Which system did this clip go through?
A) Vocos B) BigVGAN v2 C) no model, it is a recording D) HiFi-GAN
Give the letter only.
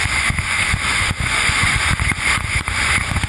A